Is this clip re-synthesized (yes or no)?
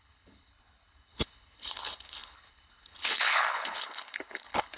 yes